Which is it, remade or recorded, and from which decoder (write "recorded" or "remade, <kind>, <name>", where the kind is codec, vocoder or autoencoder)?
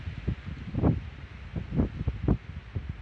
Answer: recorded